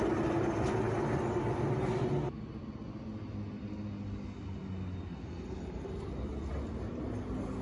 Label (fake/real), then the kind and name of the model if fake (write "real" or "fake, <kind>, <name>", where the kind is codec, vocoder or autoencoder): real